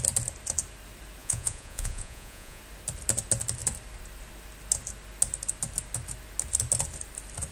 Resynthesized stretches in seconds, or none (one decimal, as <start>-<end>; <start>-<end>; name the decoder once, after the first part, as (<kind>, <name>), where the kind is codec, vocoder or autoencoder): 1.2-2.6 (vocoder, Vocos)